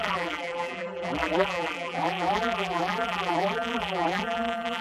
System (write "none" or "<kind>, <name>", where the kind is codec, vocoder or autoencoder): vocoder, BigVGAN v2